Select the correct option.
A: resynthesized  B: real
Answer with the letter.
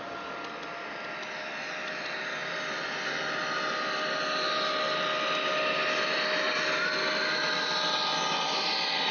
B